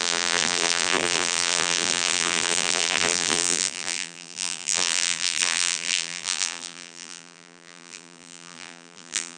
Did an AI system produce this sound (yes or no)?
yes